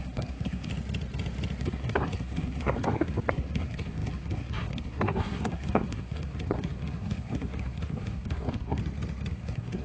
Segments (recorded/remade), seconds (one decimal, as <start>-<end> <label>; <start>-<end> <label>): 0.0-0.7 remade; 0.7-1.6 recorded; 1.6-8.8 remade; 8.8-9.3 recorded; 9.3-9.8 remade

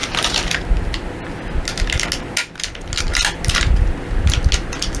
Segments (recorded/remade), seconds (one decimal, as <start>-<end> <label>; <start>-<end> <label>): 0.0-5.0 recorded

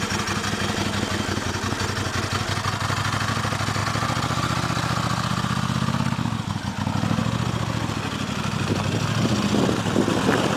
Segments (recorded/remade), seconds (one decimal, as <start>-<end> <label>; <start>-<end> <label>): 0.0-10.6 recorded